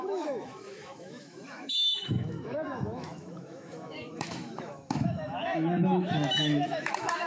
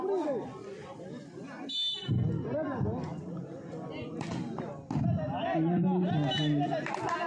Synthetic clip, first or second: first